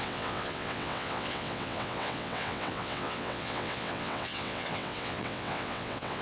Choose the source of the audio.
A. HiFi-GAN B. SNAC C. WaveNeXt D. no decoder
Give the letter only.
C